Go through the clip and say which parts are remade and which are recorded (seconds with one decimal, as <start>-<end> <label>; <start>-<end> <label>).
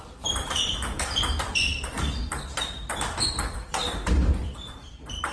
0.0-5.3 remade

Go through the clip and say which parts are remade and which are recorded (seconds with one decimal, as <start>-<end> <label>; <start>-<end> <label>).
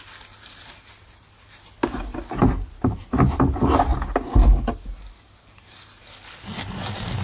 0.0-7.2 recorded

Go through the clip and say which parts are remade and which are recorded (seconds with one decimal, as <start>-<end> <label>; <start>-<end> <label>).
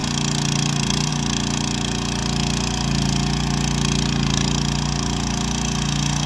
0.0-6.3 recorded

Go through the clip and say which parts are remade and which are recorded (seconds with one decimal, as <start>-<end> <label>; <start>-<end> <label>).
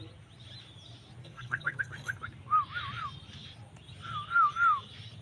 0.0-1.2 recorded; 1.2-1.8 remade; 1.8-5.2 recorded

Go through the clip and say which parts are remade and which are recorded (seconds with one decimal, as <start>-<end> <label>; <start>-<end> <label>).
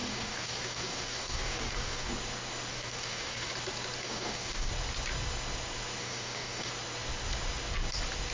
0.0-2.1 remade; 2.1-2.7 recorded; 2.7-3.5 remade; 3.5-4.0 recorded; 4.0-4.7 remade; 4.7-6.0 recorded; 6.0-6.7 remade; 6.7-8.3 recorded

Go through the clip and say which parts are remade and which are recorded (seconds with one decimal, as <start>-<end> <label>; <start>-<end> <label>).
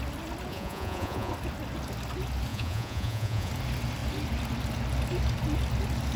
0.0-0.5 recorded; 0.5-1.3 remade; 1.3-2.5 recorded; 2.5-3.5 remade; 3.5-6.2 recorded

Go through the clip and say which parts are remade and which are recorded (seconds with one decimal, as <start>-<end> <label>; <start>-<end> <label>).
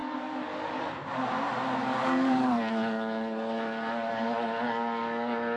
0.0-0.8 remade; 0.8-1.8 recorded; 1.8-5.6 remade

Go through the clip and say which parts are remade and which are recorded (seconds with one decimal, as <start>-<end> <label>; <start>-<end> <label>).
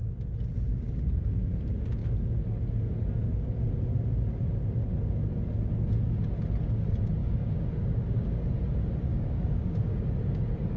0.0-7.2 recorded; 7.2-8.4 remade; 8.4-9.1 recorded; 9.1-10.1 remade; 10.1-10.8 recorded